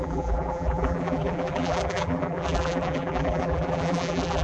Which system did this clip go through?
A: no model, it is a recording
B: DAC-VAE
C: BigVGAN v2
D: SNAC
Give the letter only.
C